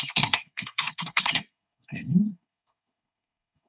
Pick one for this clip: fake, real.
fake